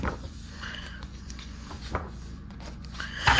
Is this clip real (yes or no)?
no